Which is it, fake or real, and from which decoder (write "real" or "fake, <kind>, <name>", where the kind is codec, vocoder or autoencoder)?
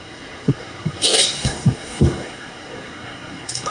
fake, codec, SNAC